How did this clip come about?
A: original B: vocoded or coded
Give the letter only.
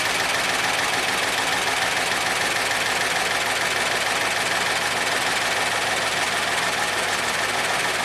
A